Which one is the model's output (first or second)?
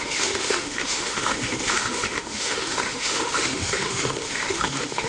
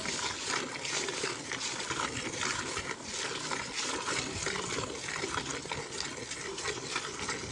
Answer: first